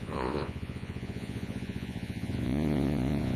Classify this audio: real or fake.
fake